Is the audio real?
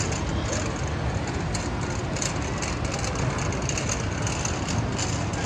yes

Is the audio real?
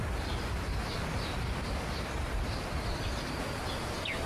yes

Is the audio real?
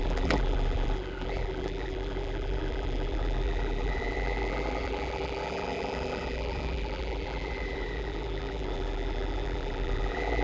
no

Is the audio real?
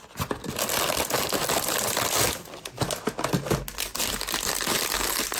yes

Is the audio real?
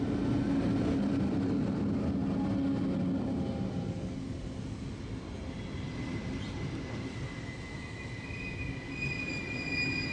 yes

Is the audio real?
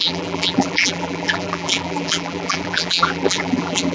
no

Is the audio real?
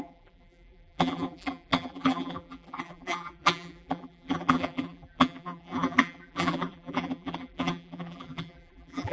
no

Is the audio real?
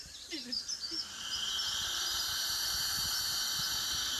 yes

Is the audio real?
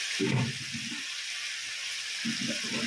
yes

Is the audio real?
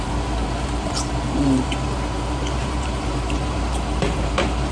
no